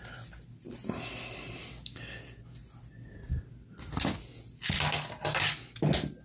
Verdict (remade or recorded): recorded